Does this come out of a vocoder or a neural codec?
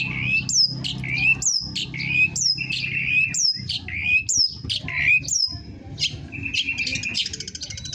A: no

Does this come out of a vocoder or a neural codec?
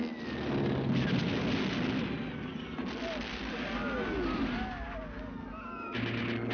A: no